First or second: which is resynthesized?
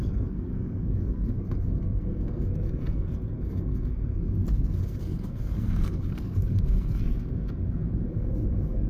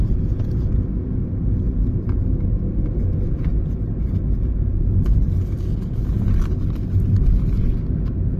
first